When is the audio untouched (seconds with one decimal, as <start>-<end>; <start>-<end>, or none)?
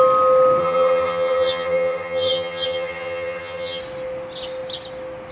0.0-0.6; 3.8-5.3